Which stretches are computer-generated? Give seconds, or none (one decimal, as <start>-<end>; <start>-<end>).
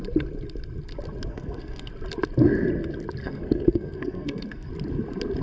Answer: 1.3-1.9; 3.2-4.7